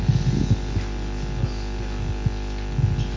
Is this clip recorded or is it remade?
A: recorded